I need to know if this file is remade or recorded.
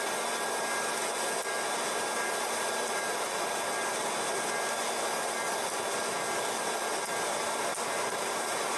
recorded